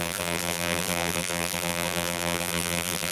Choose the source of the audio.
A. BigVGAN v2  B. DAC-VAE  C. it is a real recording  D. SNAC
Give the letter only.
A